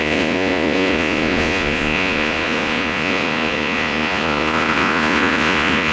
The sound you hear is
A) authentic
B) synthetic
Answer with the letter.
B